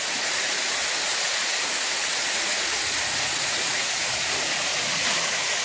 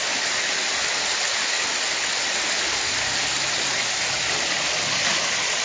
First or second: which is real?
second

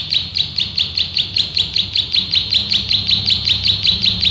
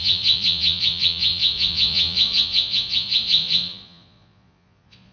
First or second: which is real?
first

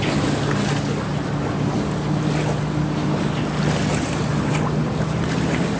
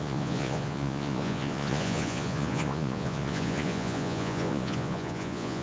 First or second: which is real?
first